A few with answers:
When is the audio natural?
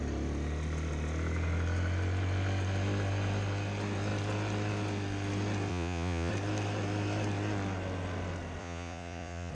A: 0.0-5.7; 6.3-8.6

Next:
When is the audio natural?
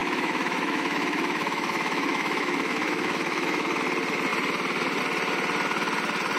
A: 3.8-6.4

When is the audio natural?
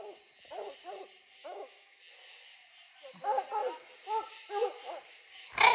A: 0.0-1.4; 2.0-5.7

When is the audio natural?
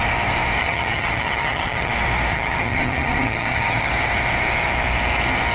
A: 0.0-0.6; 1.9-2.3; 3.9-5.5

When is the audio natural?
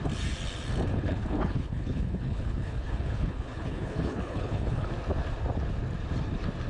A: 0.0-0.9; 4.9-6.7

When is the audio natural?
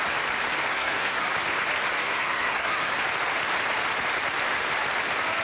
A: 0.0-0.7; 1.3-2.0; 2.9-5.4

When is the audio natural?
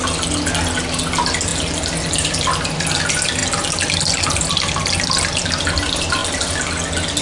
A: 0.0-7.2